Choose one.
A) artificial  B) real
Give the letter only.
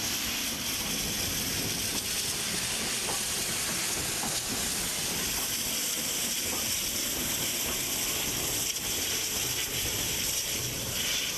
B